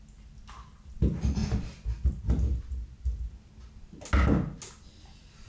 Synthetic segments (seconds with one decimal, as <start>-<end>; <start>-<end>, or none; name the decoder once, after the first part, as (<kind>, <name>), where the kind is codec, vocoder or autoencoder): none